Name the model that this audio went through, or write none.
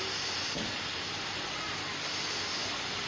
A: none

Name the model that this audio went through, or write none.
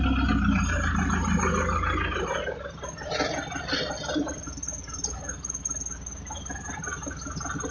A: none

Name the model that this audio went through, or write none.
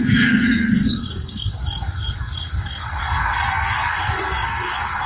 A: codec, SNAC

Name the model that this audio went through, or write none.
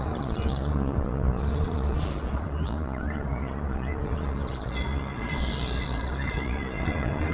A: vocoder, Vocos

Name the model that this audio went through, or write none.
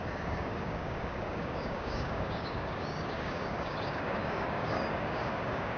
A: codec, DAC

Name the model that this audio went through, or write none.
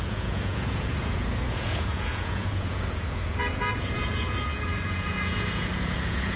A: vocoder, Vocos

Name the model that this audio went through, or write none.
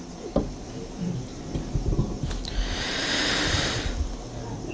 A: none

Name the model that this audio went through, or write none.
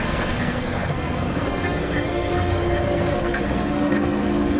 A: codec, SNAC